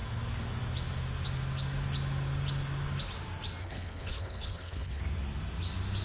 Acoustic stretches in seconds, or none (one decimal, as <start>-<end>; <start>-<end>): 0.0-3.6; 5.0-6.0